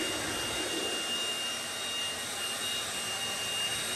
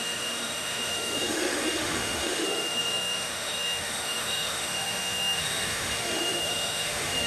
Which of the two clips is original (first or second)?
first